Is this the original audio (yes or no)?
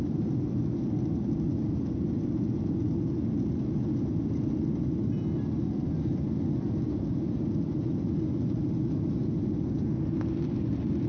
yes